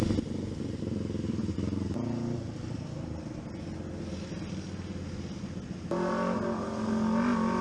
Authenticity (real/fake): real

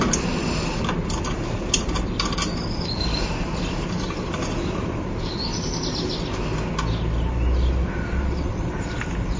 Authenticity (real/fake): real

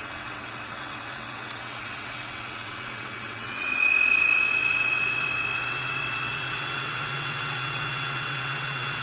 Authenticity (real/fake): fake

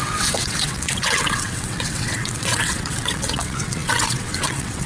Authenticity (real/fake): fake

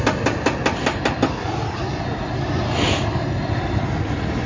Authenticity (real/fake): real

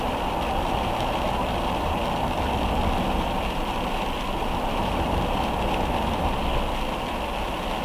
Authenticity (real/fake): real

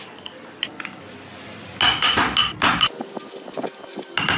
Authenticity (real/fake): real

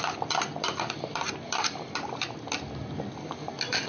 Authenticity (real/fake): real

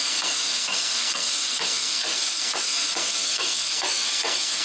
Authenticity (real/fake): fake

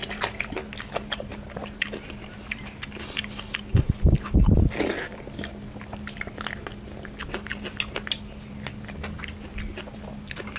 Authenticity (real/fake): real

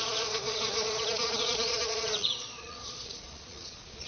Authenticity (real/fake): fake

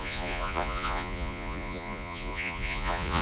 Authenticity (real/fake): fake